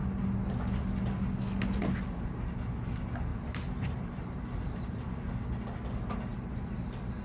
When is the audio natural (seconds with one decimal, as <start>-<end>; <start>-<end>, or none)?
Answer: 0.0-3.3; 5.1-7.2

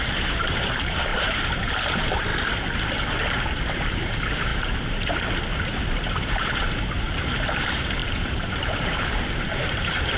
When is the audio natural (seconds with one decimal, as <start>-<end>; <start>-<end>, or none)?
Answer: 4.5-5.5

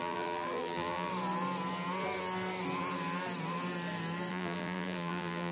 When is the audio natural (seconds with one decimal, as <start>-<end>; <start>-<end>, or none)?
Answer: 1.1-4.3

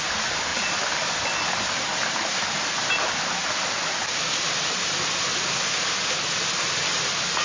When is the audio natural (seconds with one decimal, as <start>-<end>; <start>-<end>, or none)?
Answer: 0.0-0.5; 1.1-7.4